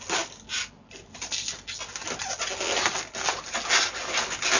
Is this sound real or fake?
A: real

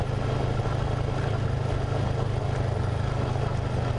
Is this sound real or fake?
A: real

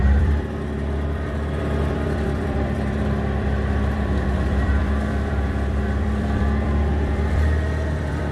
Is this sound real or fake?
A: fake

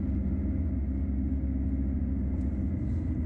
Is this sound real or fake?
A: real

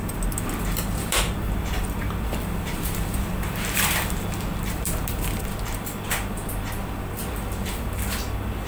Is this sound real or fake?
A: fake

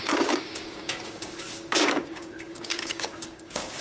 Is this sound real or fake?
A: fake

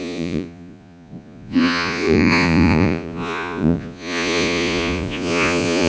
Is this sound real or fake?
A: fake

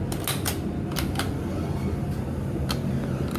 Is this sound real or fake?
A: real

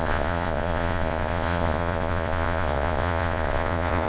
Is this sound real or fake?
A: fake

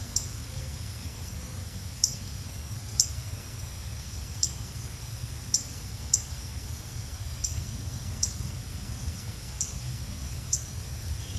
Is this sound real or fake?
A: fake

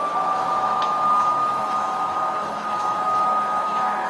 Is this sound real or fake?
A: fake